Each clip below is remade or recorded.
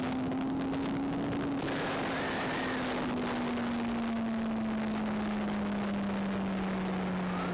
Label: recorded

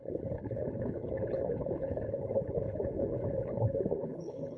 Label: remade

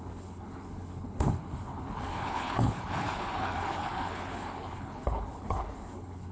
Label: remade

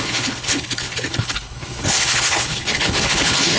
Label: remade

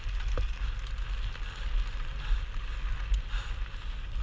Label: recorded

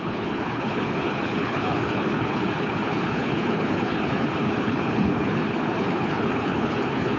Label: remade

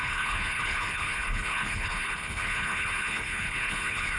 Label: remade